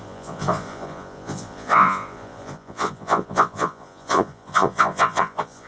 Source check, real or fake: fake